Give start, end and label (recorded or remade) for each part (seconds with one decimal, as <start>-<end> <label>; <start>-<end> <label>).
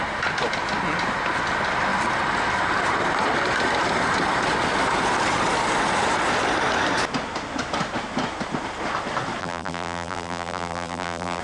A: 0.0-9.4 recorded; 9.4-11.4 remade